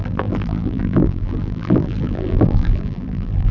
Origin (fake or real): fake